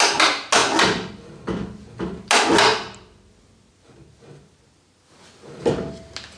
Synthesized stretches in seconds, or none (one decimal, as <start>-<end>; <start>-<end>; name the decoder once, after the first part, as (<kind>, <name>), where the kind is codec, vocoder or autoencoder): none